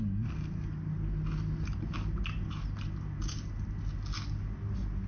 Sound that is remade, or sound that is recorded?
recorded